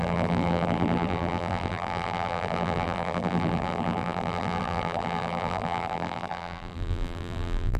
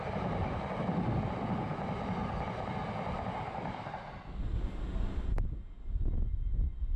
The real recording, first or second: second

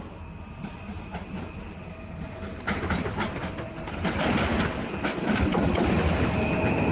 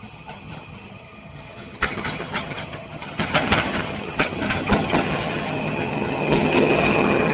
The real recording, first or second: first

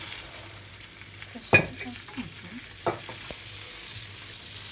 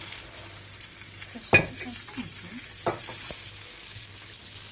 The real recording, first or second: second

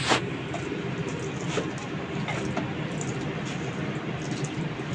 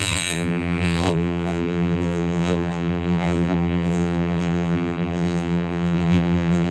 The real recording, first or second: first